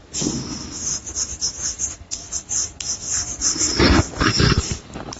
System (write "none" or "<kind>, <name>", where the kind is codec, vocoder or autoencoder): none